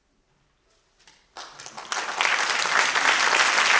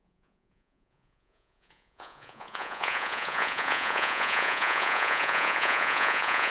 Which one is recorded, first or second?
first